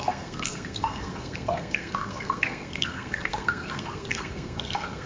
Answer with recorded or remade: remade